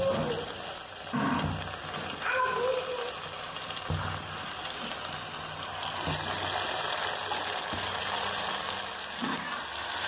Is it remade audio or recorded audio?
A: recorded